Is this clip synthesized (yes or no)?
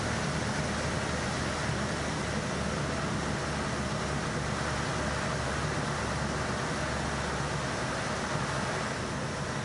no